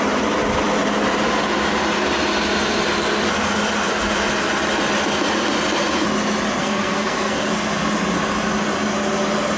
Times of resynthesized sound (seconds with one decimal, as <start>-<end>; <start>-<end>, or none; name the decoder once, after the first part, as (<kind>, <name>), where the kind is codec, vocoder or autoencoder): 6.6-7.5 (codec, SNAC)